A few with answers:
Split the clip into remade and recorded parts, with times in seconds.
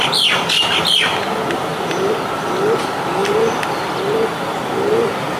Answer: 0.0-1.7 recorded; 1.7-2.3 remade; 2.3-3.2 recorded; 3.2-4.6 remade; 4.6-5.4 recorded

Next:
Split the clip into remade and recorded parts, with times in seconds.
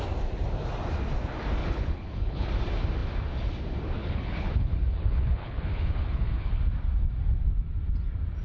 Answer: 0.0-1.6 recorded; 1.6-2.5 remade; 2.5-4.0 recorded; 4.0-6.6 remade; 6.6-8.4 recorded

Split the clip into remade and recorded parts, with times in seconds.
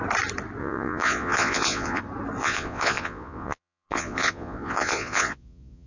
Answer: 0.0-0.6 recorded; 0.6-2.0 remade; 2.0-2.4 recorded; 2.4-5.9 remade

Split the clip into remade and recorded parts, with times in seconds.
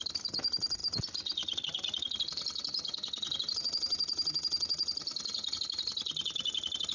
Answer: 0.0-6.9 recorded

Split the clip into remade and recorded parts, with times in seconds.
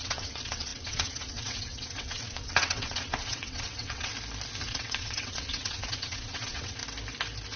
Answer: 0.0-4.1 remade; 4.1-4.7 recorded; 4.7-6.8 remade; 6.8-7.6 recorded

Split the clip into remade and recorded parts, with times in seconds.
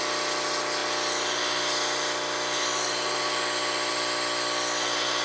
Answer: 0.0-5.2 recorded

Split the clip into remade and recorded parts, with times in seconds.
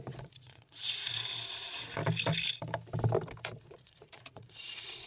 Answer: 0.0-1.1 remade; 1.1-3.6 recorded; 3.6-5.1 remade